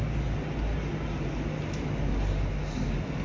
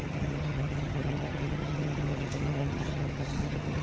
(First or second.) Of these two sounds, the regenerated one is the second